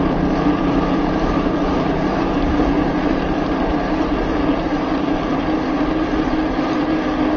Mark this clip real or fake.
fake